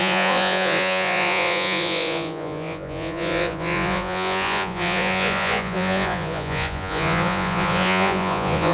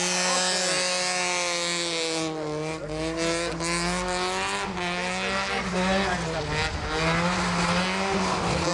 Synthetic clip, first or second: first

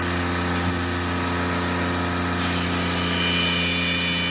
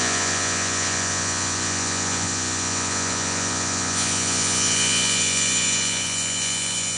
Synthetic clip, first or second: second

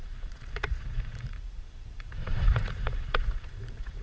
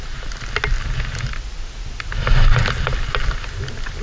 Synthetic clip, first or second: first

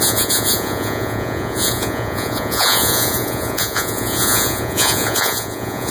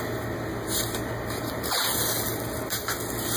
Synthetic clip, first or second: first